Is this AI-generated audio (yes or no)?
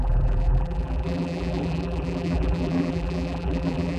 yes